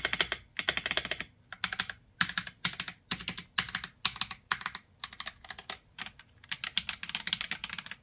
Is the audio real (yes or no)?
yes